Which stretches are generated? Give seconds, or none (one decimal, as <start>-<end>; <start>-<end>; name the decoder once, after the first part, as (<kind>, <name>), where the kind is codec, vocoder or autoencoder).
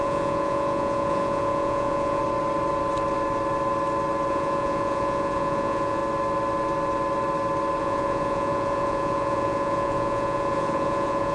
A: 0.0-2.2 (vocoder, Vocos); 4.3-6.0; 7.8-11.3